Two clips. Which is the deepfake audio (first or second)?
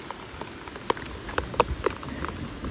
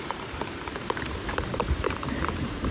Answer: second